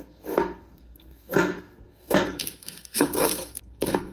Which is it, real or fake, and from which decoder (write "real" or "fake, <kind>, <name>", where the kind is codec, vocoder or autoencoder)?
fake, codec, SNAC